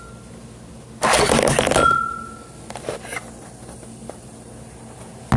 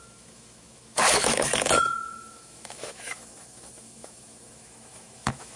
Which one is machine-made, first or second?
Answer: second